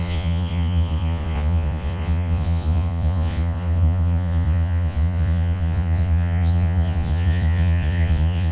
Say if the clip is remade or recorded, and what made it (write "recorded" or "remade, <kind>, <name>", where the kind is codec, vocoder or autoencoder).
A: remade, vocoder, Vocos